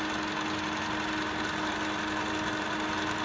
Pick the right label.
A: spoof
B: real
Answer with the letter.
B